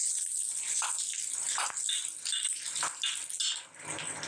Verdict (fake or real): real